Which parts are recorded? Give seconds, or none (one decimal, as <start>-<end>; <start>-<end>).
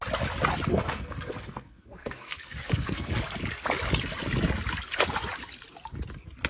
0.0-0.7; 3.2-6.5